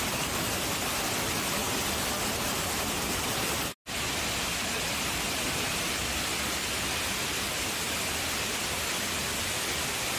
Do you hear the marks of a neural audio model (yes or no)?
no